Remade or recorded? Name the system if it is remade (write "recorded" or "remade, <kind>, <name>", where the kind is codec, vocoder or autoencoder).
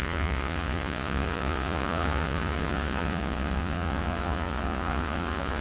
remade, vocoder, Vocos